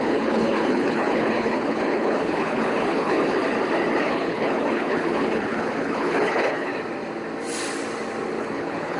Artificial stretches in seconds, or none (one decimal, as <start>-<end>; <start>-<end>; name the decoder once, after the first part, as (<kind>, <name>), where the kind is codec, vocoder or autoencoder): 0.0-3.4 (codec, HILCodec); 4.0-6.7; 8.4-9.0